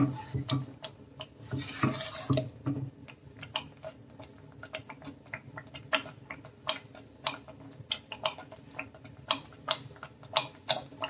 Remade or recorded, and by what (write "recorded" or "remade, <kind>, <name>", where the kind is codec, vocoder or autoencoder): recorded